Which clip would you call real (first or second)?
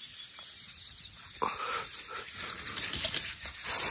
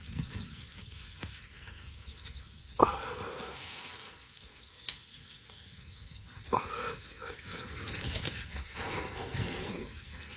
first